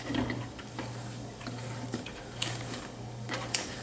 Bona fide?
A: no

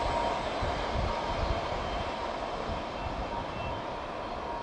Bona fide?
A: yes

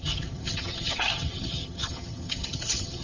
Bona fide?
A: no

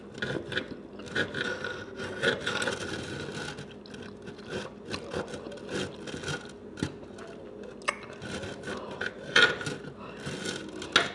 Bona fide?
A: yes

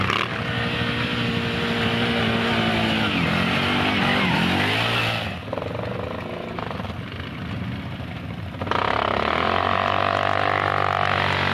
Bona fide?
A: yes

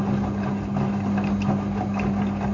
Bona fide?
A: yes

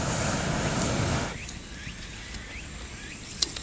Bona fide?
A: yes